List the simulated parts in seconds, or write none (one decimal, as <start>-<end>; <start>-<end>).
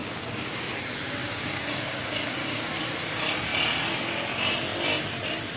0.0-0.6; 1.2-2.7